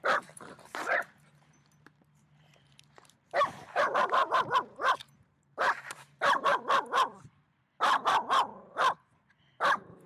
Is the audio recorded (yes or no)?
no